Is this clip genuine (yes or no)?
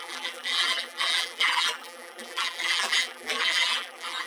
no